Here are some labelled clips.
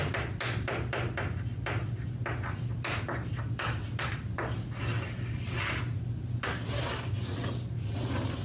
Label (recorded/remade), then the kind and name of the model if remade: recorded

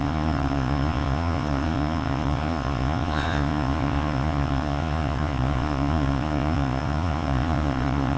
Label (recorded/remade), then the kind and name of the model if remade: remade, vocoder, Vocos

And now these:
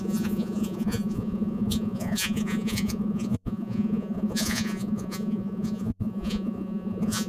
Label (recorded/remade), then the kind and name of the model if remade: remade, vocoder, Vocos